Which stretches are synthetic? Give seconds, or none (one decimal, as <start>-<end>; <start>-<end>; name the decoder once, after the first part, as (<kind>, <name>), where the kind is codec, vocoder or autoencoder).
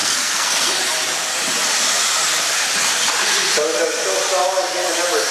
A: 0.0-0.7 (codec, SNAC)